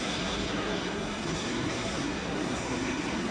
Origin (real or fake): fake